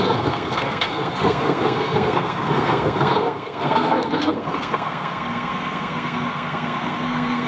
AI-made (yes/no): yes